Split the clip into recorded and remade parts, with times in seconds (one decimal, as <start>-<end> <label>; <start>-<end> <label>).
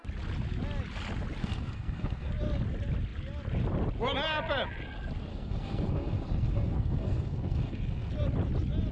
0.0-1.4 recorded; 1.4-2.3 remade; 2.3-5.3 recorded; 5.3-8.1 remade; 8.1-8.9 recorded